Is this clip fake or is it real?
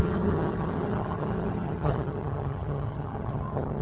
fake